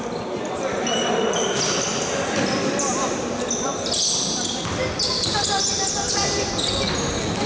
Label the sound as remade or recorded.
recorded